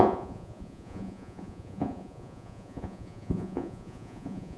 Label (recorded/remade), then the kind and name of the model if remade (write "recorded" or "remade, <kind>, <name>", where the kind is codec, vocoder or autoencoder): remade, vocoder, Vocos